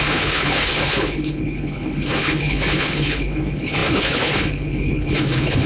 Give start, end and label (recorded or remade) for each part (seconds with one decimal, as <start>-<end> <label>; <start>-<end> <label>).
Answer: 0.0-5.7 remade